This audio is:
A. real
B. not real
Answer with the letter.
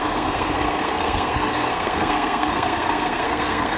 B